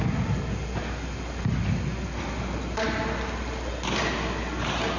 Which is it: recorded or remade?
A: recorded